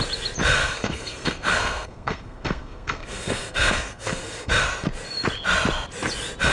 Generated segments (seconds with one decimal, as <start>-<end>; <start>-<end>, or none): 0.6-4.5

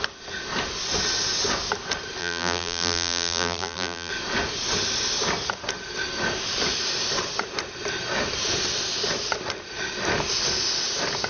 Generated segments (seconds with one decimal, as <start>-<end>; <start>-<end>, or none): 2.2-4.1

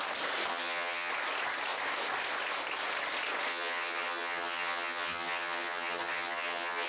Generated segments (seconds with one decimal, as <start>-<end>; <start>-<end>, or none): 0.5-1.1; 3.5-6.9